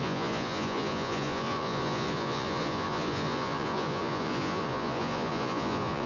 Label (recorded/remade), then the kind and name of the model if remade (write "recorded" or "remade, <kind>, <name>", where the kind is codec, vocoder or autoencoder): remade, vocoder, Vocos